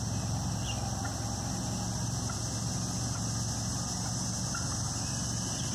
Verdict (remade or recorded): recorded